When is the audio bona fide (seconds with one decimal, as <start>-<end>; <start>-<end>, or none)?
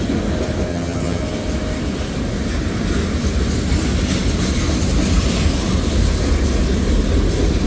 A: 0.0-0.7; 1.2-7.7